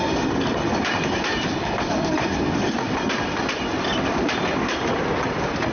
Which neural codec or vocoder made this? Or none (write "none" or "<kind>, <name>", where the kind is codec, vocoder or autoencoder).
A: vocoder, BigVGAN v2